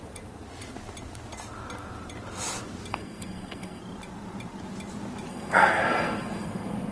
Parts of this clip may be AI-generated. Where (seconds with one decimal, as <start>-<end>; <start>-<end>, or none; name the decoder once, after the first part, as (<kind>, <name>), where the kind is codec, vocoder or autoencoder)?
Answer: 2.9-3.8 (codec, SNAC); 5.3-6.9